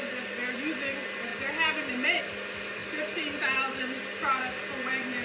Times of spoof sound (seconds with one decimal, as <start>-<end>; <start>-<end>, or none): none